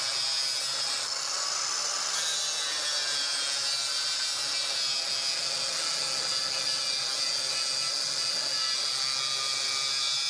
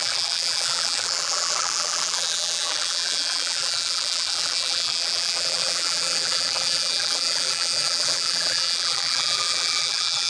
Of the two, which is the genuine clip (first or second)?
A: first